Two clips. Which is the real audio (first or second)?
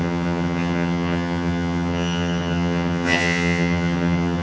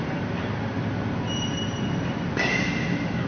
second